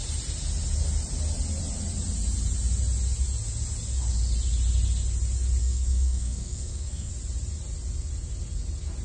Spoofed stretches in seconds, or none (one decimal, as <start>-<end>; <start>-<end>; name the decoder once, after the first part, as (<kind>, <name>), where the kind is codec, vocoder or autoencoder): 5.6-7.1 (codec, SNAC)